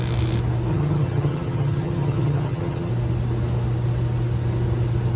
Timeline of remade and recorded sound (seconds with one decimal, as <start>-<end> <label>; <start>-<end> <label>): 0.0-0.7 recorded; 0.7-2.9 remade; 2.9-5.2 recorded